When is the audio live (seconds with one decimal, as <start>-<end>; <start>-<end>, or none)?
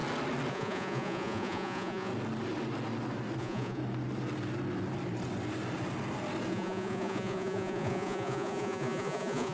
0.0-0.5; 2.1-3.4; 3.8-6.5